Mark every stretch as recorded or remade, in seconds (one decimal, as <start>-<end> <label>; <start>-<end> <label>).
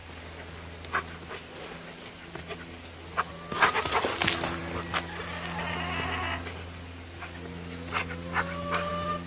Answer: 0.0-9.3 recorded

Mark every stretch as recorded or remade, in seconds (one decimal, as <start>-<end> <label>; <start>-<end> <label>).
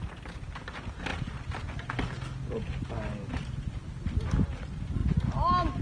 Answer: 0.0-5.8 recorded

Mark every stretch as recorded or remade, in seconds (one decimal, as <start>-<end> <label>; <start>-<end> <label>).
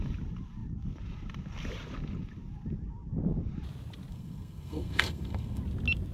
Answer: 0.0-4.1 recorded; 4.1-5.6 remade; 5.6-6.1 recorded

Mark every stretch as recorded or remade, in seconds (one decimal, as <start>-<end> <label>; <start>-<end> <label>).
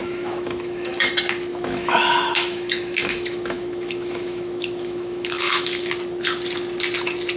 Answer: 0.0-1.1 remade; 1.1-1.5 recorded; 1.5-5.9 remade; 5.9-7.4 recorded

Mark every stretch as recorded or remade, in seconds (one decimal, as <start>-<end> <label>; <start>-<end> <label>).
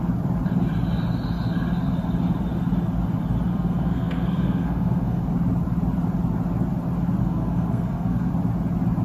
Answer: 0.0-3.5 recorded; 3.5-5.3 remade; 5.3-7.2 recorded; 7.2-8.3 remade; 8.3-9.0 recorded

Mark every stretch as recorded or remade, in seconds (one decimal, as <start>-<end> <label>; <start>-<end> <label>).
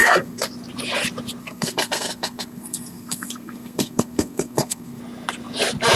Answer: 0.0-0.5 remade; 0.5-1.4 recorded; 1.4-5.0 remade; 5.0-6.0 recorded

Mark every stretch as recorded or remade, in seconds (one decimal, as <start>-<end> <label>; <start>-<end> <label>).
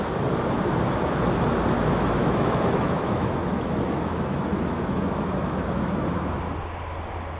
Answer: 0.0-2.2 recorded; 2.2-6.0 remade; 6.0-7.4 recorded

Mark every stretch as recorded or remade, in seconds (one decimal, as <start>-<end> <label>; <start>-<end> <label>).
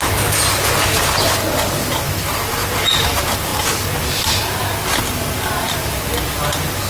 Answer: 0.0-6.9 recorded